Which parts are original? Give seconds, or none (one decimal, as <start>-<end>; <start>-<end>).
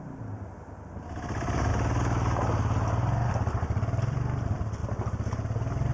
1.7-3.3; 4.8-5.9